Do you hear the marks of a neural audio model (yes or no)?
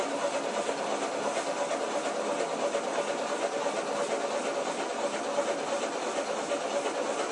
no